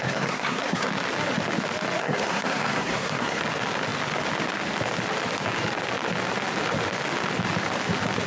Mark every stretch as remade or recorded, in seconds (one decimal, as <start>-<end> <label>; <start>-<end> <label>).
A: 0.0-0.9 remade; 0.9-2.0 recorded; 2.0-3.4 remade; 3.4-8.3 recorded